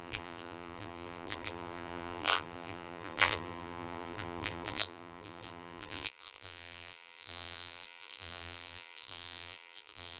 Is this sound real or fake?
fake